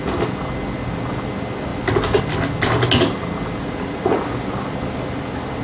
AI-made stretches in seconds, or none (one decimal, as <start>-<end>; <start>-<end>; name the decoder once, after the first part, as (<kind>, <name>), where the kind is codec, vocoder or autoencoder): 3.6-4.2 (vocoder, Vocos)